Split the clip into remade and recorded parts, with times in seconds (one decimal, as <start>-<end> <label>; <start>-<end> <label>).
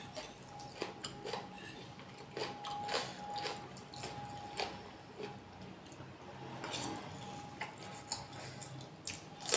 0.0-1.0 recorded; 1.0-1.6 remade; 1.6-8.6 recorded; 8.6-9.1 remade; 9.1-9.6 recorded